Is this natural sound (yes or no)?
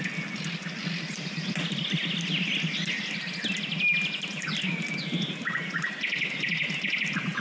yes